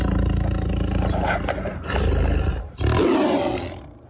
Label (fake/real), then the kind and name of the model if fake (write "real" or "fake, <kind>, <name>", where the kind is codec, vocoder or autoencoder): real